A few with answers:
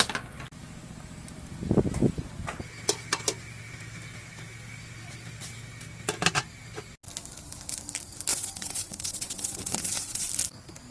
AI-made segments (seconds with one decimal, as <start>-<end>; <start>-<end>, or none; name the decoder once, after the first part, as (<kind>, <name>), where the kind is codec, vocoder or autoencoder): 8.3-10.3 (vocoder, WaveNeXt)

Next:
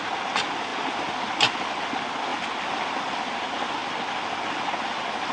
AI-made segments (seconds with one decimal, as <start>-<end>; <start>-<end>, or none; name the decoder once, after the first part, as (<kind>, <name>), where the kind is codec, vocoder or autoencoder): 2.3-2.8 (vocoder, BigVGAN v2)

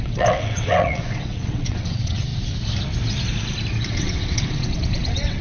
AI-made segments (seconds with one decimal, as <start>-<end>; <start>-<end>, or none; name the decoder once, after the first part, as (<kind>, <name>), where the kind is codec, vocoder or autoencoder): 0.0-2.3 (vocoder, WaveNeXt); 3.9-5.4

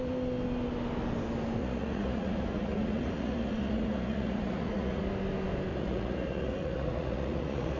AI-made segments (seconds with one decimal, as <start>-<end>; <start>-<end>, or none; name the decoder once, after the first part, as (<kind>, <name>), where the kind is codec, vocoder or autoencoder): 1.6-5.0 (vocoder, Vocos); 5.7-7.8

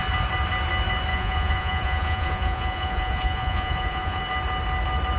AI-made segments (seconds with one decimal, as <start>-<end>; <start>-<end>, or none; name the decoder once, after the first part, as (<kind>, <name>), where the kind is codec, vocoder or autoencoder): 1.1-4.2 (vocoder, Vocos)

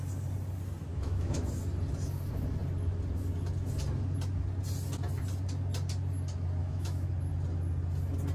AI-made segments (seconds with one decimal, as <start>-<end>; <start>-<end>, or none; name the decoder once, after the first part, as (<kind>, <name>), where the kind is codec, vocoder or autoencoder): 0.9-1.5 (autoencoder, DAC-VAE); 6.6-7.1